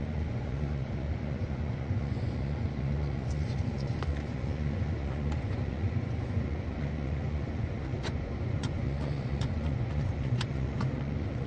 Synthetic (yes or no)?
yes